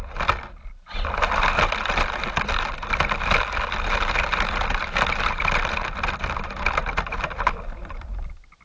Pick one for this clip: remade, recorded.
remade